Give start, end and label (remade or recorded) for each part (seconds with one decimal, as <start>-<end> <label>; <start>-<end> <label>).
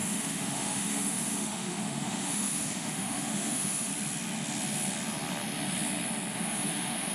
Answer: 0.0-3.9 remade; 3.9-6.3 recorded; 6.3-7.1 remade